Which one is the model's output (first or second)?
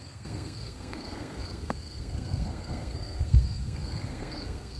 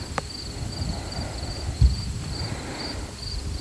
first